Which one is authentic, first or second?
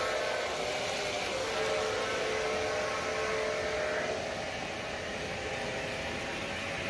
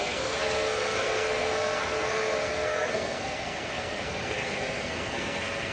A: first